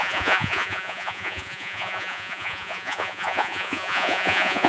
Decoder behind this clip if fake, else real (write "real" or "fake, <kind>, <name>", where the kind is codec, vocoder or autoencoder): fake, vocoder, Vocos